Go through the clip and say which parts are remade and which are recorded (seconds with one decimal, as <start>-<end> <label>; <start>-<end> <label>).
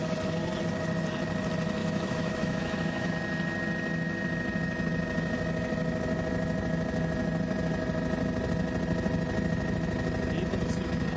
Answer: 0.0-1.8 recorded; 1.8-3.1 remade; 3.1-11.2 recorded